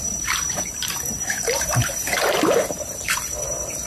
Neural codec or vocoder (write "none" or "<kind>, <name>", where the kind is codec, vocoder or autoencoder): vocoder, BigVGAN v2